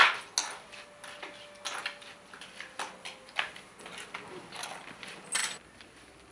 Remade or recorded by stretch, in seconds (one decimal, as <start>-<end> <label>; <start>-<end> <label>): 0.0-6.3 recorded